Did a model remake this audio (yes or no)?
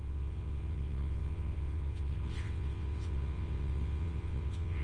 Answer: yes